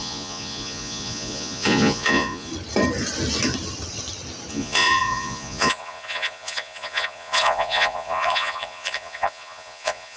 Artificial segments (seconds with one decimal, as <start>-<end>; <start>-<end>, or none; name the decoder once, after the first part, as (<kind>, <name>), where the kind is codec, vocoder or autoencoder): 0.0-2.5 (vocoder, Vocos); 4.5-10.2